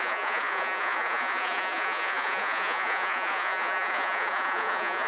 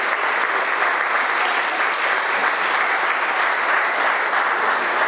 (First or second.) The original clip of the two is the second